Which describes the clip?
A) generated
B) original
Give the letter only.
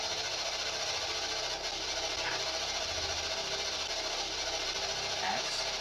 B